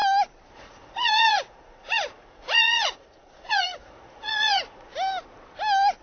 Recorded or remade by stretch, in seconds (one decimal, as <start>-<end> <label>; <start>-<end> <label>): 0.0-0.5 recorded; 0.5-4.9 remade; 4.9-6.0 recorded